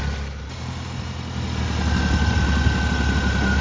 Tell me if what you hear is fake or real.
real